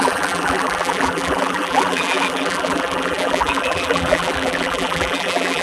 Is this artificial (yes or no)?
yes